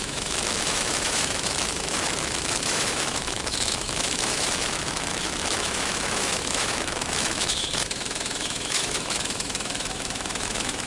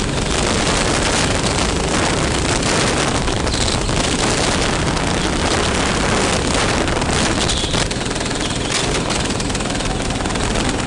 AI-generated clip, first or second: first